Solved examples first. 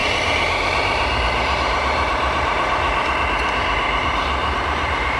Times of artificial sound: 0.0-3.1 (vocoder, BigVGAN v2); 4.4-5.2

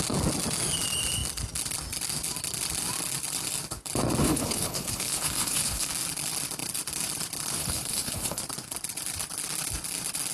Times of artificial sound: 4.2-5.9 (codec, HILCodec); 7.6-8.4

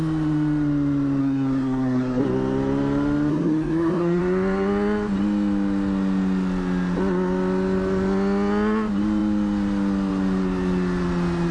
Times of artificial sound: 1.2-2.2 (codec, SNAC); 3.3-4.2

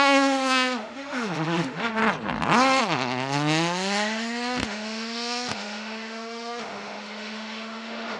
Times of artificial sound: 0.0-2.0 (autoencoder, DAC-VAE); 2.8-8.2